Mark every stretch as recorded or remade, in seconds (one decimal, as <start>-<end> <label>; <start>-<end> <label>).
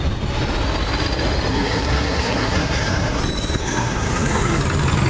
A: 0.0-1.5 recorded; 1.5-3.2 remade; 3.2-3.6 recorded; 3.6-4.6 remade; 4.6-5.1 recorded